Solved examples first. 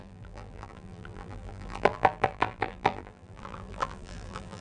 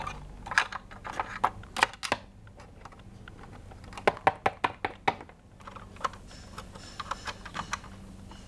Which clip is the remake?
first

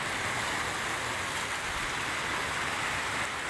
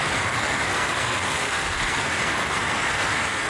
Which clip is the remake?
second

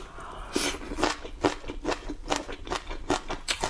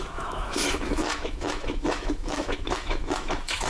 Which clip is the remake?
second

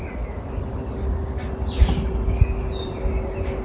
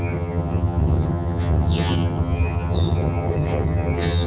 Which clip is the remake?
second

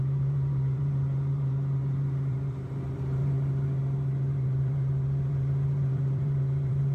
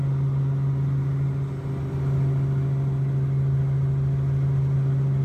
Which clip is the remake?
first